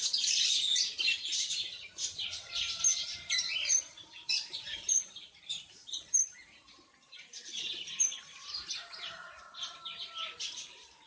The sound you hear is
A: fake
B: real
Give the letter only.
A